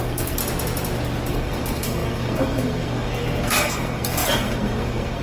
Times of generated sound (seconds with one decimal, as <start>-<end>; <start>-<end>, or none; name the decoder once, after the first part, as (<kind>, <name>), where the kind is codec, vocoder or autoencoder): 0.0-0.4 (codec, SNAC); 1.3-5.2